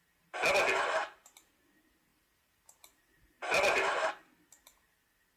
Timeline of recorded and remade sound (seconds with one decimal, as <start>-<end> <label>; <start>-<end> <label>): 0.0-1.0 recorded; 1.0-1.5 remade; 1.5-2.1 recorded; 2.1-4.1 remade; 4.1-5.4 recorded